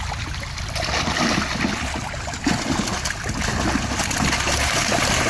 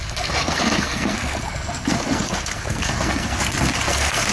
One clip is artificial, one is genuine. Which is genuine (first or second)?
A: first